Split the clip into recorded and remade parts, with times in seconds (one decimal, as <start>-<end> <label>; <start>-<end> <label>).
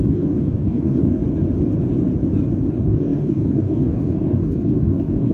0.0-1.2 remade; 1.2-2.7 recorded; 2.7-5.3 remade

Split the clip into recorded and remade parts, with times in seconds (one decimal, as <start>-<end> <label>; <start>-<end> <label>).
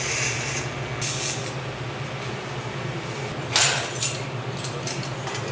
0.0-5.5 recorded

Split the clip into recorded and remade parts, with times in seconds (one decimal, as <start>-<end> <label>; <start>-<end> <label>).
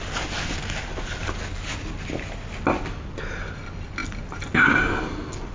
0.0-5.5 recorded